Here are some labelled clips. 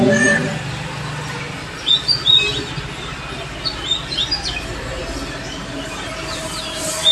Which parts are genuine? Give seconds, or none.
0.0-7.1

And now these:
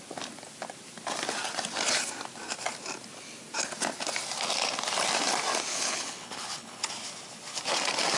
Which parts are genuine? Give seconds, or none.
0.0-5.7; 6.9-8.2

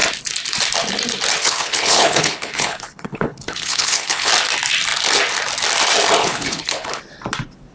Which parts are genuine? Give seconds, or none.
0.0-1.4; 4.3-6.2; 7.0-7.7

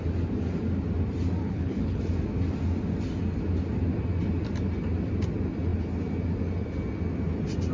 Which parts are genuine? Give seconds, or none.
0.0-1.4; 2.0-7.7

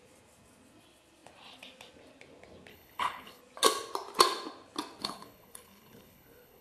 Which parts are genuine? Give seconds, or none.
0.0-2.7; 3.4-5.0